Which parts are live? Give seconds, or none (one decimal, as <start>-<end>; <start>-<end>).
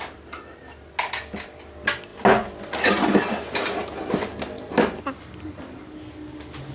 0.0-6.7